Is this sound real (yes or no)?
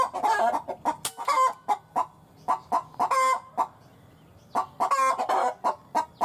yes